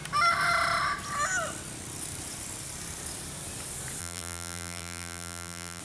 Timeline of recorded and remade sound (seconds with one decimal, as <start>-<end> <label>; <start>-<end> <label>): 0.0-4.0 recorded; 4.0-5.8 remade